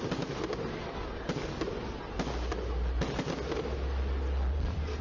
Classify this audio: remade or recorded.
recorded